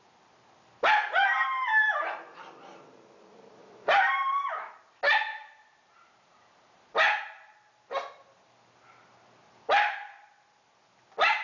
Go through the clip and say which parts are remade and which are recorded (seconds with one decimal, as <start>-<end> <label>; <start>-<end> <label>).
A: 0.0-3.6 recorded; 3.6-4.5 remade; 4.5-5.3 recorded; 5.3-7.2 remade; 7.2-11.4 recorded